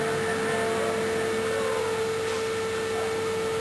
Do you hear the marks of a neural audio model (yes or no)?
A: no